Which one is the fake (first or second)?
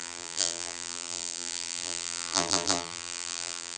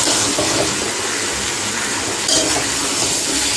first